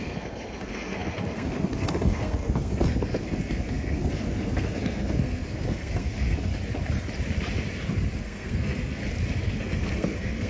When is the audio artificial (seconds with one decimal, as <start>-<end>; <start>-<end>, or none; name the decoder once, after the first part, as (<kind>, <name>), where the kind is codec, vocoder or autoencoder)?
0.0-6.5 (codec, SNAC); 8.2-9.0; 9.5-10.5